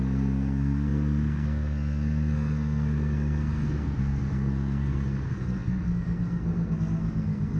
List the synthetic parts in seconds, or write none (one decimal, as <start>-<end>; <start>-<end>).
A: 0.0-7.6